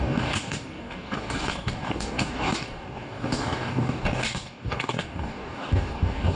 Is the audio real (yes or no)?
no